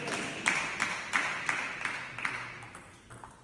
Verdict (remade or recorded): recorded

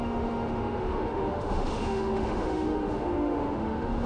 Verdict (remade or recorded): remade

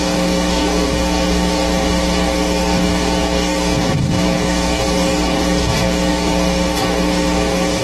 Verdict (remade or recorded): remade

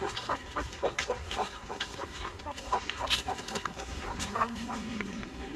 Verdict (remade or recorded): remade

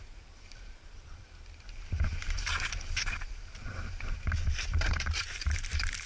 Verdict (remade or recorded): remade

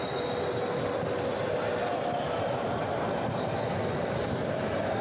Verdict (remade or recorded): recorded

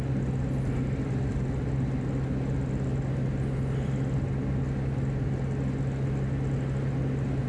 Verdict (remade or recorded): recorded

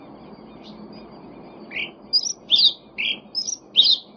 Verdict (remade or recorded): recorded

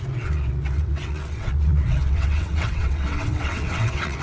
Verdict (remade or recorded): remade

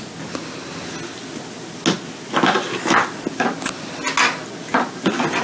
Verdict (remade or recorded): recorded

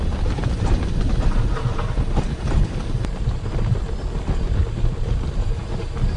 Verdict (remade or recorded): recorded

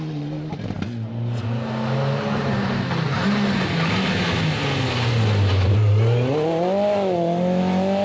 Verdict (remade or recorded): recorded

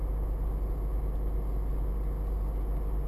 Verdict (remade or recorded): recorded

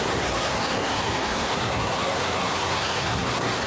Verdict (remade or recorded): remade